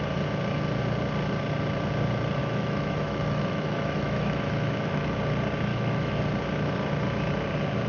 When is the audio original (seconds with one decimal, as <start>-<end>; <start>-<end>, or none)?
0.0-2.4; 5.1-5.7; 6.2-7.9